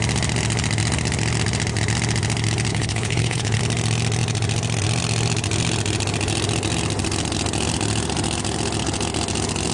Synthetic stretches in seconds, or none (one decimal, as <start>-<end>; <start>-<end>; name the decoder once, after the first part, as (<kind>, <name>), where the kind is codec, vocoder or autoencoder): 2.7-3.6 (codec, HILCodec)